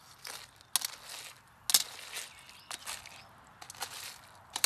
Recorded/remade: recorded